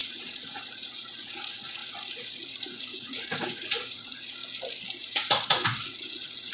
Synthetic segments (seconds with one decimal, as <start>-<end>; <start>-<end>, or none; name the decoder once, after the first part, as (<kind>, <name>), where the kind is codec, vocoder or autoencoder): 0.0-4.4 (vocoder, Vocos); 5.0-6.5